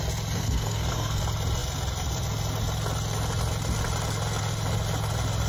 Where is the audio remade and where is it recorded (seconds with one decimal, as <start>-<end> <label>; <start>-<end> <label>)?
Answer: 0.0-0.4 recorded; 0.4-1.2 remade; 1.2-5.5 recorded